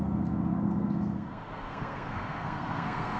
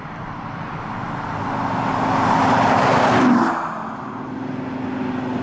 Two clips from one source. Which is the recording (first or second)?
second